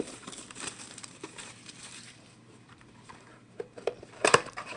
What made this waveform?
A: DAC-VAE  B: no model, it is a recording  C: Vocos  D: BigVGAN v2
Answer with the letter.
D